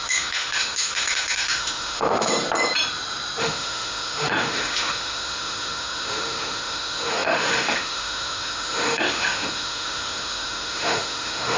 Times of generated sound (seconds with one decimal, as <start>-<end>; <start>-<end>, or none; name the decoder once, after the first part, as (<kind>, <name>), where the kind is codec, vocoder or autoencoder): 0.0-2.3 (autoencoder, DAC-VAE); 3.4-11.6